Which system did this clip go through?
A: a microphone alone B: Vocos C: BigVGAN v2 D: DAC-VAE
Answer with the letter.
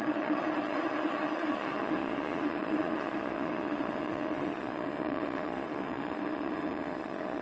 B